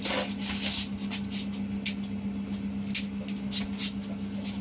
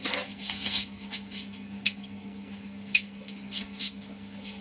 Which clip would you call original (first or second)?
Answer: first